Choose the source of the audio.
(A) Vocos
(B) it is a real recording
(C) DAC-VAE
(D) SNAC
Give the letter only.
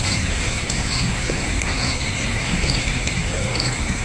D